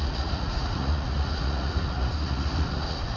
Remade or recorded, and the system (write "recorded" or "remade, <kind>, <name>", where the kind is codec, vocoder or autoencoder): remade, vocoder, Vocos